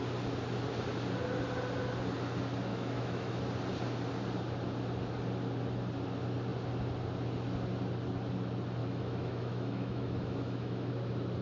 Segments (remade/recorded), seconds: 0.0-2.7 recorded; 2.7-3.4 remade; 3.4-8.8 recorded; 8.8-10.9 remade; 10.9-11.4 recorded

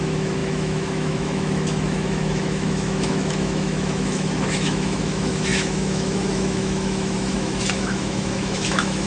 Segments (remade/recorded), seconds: 0.0-9.1 remade